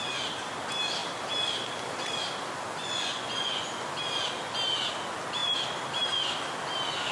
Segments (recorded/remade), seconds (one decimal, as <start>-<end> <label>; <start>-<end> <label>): 0.0-2.8 recorded; 2.8-3.7 remade; 3.7-7.1 recorded